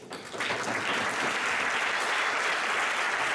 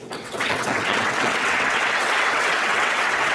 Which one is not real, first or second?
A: second